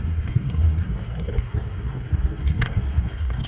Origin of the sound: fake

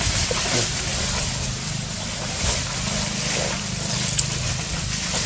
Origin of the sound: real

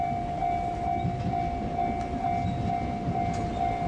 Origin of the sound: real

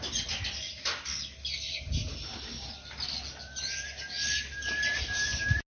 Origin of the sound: real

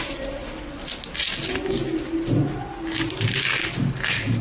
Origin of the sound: real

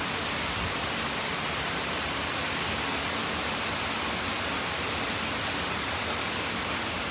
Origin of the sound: real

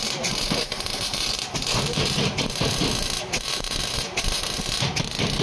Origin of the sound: real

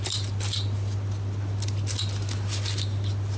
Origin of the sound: real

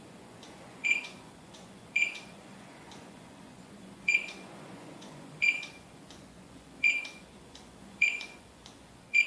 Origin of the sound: fake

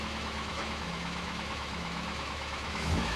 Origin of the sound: fake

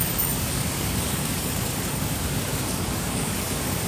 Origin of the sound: fake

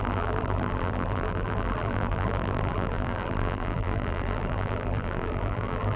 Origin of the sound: fake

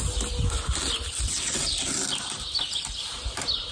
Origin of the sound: real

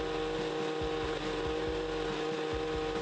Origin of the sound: real